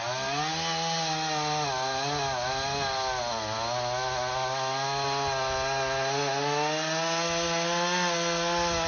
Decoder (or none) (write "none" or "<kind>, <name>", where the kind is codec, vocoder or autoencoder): none